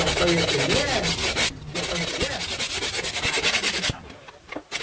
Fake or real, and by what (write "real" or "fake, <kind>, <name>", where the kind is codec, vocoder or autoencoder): real